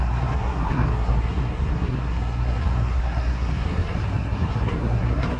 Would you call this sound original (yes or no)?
no